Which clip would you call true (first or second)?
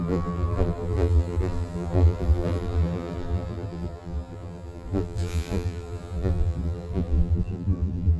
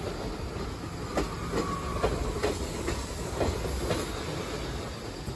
second